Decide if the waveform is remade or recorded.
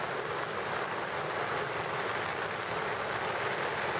recorded